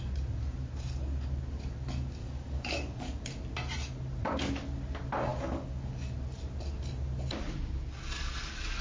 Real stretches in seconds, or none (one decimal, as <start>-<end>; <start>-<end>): 0.0-2.2; 3.2-5.3; 5.9-8.8

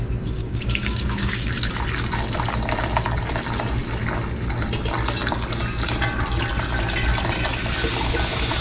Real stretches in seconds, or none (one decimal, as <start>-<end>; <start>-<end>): 0.0-0.4; 1.5-8.6

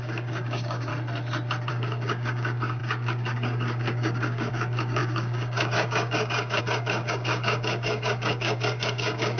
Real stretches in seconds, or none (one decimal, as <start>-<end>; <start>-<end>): 0.9-1.7

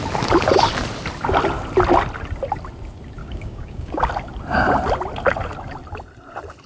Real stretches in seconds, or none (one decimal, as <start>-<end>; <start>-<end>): 0.0-3.2; 4.1-6.7

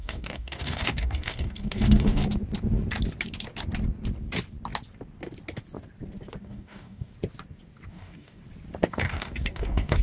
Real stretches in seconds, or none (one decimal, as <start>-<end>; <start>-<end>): 2.2-6.4; 7.1-7.9; 8.4-8.9

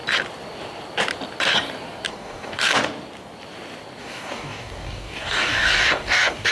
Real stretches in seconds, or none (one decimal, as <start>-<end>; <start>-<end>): 0.0-2.1; 2.7-4.0

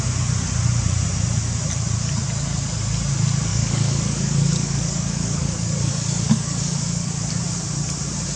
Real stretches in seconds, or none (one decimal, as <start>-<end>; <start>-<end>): 0.0-3.5; 7.3-8.4